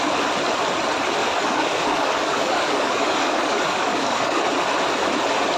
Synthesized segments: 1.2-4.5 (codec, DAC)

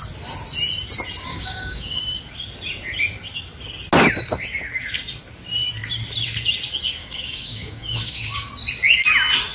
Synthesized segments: 1.3-2.0 (codec, DAC); 7.0-8.5

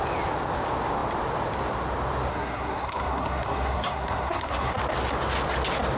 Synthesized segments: 2.3-4.8 (codec, SNAC)

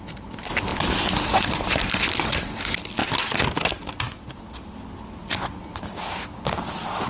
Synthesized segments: none